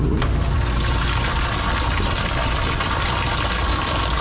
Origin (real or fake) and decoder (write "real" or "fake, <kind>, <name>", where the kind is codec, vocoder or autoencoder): real